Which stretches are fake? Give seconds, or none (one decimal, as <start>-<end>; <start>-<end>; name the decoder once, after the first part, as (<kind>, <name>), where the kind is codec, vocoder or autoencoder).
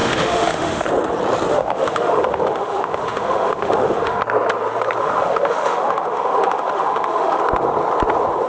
0.0-0.9 (autoencoder, DAC-VAE); 1.5-4.2; 5.0-7.4